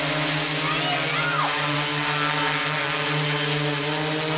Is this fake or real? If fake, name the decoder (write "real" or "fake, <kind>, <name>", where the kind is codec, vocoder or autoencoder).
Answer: real